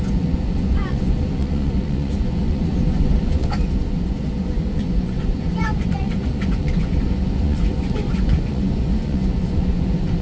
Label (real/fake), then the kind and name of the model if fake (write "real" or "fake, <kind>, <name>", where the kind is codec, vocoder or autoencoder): fake, vocoder, Vocos